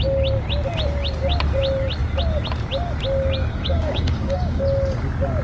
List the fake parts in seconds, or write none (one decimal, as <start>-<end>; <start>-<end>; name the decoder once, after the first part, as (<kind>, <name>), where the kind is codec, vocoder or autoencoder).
3.4-4.6 (codec, DAC)

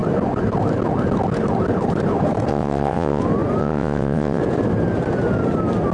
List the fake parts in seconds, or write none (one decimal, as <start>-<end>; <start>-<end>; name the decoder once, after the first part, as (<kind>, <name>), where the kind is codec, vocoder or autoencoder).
2.5-3.2 (vocoder, WaveNeXt); 3.6-4.4

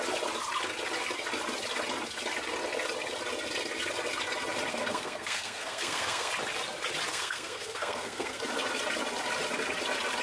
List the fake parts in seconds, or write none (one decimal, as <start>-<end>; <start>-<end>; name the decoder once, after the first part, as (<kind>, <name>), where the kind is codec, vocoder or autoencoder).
4.7-6.3 (codec, SNAC); 7.1-8.4

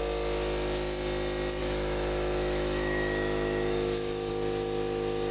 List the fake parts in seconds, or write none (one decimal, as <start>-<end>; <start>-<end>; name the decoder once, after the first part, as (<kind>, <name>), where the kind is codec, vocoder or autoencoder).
1.6-4.3 (autoencoder, DAC-VAE)

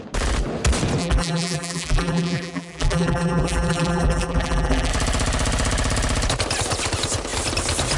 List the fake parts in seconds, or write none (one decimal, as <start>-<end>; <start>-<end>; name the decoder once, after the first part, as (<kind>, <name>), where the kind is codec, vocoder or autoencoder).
1.0-4.9 (vocoder, BigVGAN v2)